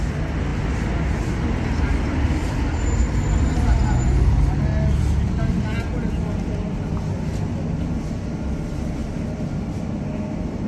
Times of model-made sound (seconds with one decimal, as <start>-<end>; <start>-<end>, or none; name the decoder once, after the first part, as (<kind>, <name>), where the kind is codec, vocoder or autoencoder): none